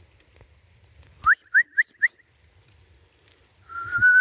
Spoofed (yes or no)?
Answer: no